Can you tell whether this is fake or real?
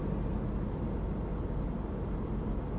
real